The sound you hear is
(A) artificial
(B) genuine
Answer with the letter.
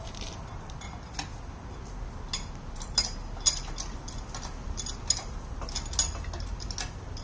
B